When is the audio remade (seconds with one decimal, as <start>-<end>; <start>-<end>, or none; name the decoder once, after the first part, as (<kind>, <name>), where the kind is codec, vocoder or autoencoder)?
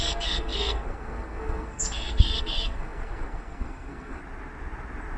0.0-4.2 (codec, SNAC)